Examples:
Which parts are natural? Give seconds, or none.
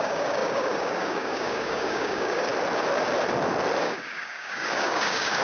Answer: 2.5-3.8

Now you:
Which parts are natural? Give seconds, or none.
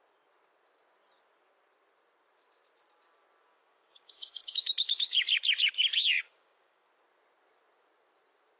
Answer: 0.0-3.5; 6.9-8.6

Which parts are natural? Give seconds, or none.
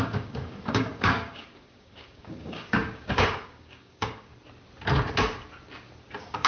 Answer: 4.3-6.1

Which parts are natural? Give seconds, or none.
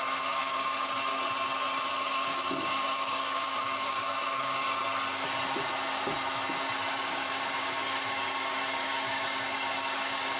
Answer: 1.1-1.9; 4.8-6.9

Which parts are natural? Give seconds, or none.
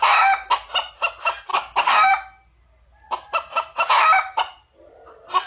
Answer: 0.0-1.5; 2.1-5.5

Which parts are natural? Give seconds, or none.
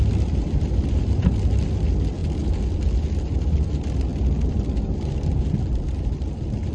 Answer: 0.0-6.7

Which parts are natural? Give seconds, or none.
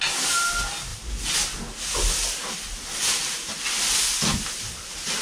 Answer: 0.0-5.2